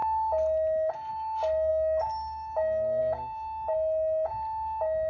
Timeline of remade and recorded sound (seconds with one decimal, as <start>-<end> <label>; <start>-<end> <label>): 0.0-5.1 recorded